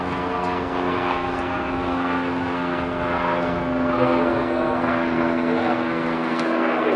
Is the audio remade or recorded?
remade